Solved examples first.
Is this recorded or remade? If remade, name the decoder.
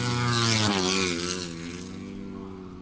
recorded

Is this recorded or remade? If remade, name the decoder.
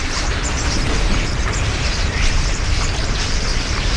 remade, vocoder, BigVGAN v2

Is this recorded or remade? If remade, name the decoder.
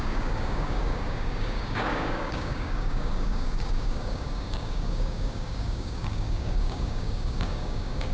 remade, codec, DAC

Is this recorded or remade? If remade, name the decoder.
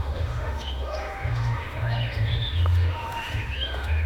remade, autoencoder, DAC-VAE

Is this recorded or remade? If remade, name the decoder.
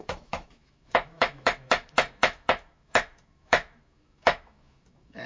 remade, autoencoder, DAC-VAE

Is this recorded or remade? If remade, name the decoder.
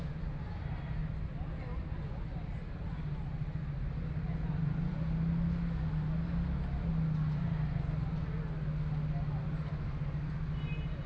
recorded